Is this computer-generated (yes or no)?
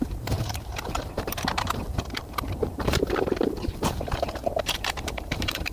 yes